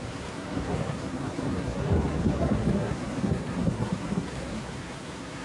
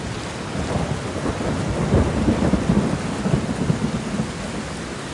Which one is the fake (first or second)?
first